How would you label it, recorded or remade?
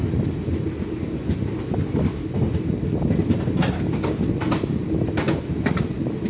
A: recorded